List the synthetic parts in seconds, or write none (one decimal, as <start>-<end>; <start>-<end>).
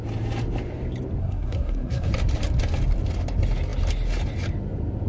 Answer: 1.2-2.1